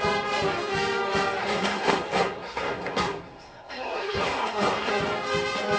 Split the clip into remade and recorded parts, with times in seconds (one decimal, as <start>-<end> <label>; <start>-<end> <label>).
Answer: 0.0-1.4 recorded; 1.4-4.9 remade; 4.9-5.8 recorded